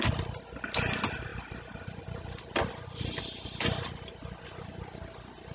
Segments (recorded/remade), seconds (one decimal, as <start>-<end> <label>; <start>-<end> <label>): 0.0-5.5 recorded